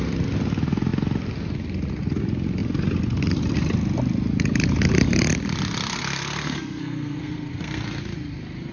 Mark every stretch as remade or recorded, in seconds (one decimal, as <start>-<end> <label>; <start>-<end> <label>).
0.0-5.9 recorded; 5.9-7.8 remade; 7.8-8.7 recorded